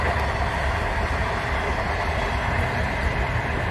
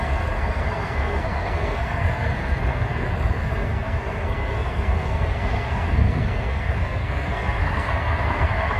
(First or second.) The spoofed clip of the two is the second